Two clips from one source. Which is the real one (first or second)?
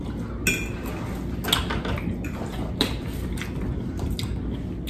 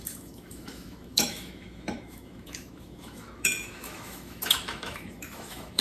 first